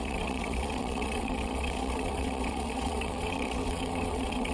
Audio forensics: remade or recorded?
remade